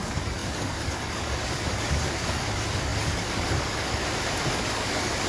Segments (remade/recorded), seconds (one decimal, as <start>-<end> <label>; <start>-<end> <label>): 0.0-4.0 remade; 4.0-4.5 recorded; 4.5-5.3 remade